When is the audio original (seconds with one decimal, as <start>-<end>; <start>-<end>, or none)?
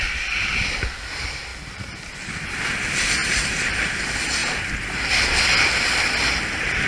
0.0-3.2; 3.8-4.4; 5.4-6.9